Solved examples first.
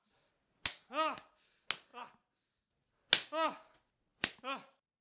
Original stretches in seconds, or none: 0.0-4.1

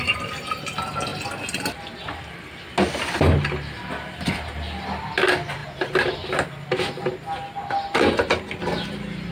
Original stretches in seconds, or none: 0.0-9.3

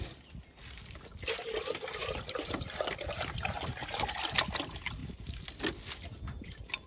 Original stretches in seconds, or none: 0.0-6.9

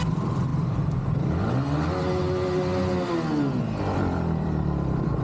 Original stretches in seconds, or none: 0.5-3.6